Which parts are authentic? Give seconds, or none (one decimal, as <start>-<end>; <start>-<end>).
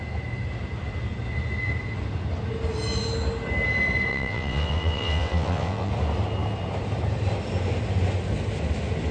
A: 0.0-4.1; 5.9-9.1